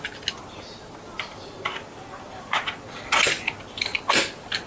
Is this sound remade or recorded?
recorded